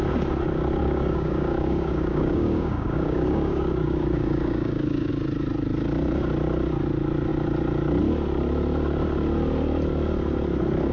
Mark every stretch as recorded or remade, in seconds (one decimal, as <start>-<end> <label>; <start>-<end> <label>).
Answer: 0.0-0.8 recorded; 0.8-5.1 remade; 5.1-10.9 recorded